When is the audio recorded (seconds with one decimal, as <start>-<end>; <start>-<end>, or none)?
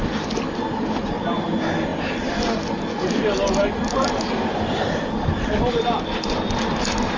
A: 0.0-7.2